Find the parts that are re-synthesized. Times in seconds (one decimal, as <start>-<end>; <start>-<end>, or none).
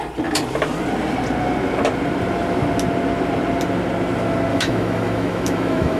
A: 4.5-6.0